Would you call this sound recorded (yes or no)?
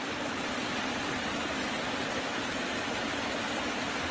yes